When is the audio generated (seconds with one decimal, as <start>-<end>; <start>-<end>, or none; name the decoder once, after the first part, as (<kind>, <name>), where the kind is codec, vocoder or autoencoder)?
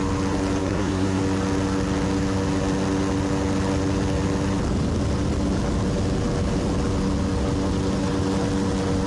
0.6-1.2 (codec, SNAC)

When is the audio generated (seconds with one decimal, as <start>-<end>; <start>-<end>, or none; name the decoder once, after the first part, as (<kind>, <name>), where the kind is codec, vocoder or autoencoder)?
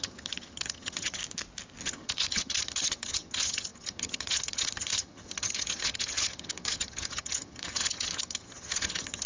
0.0-1.2 (vocoder, HiFi-GAN); 1.8-9.3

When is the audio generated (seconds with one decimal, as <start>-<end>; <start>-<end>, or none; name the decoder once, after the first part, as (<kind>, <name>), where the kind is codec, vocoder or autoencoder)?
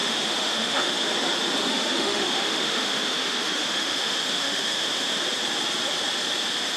0.0-0.9 (autoencoder, DAC-VAE); 1.6-5.2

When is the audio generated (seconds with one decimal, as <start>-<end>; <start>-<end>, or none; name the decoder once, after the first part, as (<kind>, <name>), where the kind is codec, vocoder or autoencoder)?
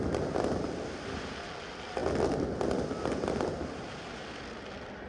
none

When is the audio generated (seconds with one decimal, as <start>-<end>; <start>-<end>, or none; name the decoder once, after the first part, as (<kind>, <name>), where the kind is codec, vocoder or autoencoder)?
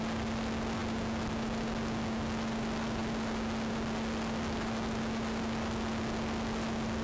none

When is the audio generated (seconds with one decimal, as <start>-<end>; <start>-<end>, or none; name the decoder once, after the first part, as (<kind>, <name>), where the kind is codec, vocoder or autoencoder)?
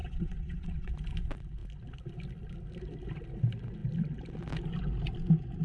0.0-0.9 (vocoder, WaveNeXt)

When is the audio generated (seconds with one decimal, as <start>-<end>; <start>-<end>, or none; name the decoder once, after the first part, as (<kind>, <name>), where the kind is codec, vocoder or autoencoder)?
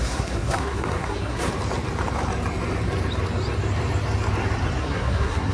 0.0-1.5 (codec, SNAC); 4.8-5.5